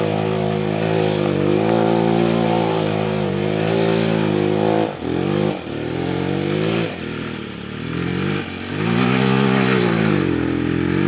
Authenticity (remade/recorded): recorded